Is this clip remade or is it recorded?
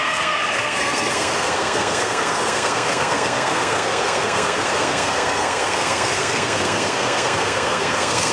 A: remade